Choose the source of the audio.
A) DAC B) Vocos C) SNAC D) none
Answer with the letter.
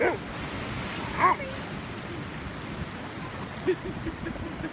D